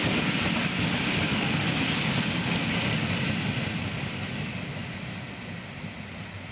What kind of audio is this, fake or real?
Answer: real